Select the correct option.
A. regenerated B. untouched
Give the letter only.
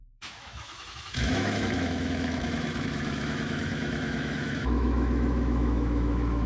A